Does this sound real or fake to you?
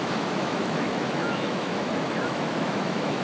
fake